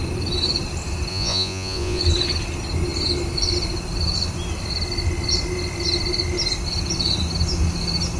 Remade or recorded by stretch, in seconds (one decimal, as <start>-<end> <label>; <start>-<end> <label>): 0.0-1.1 recorded; 1.1-2.0 remade; 2.0-8.2 recorded